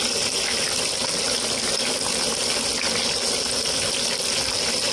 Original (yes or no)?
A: yes